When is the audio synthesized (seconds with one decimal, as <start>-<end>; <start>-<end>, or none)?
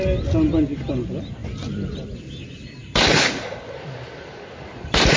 none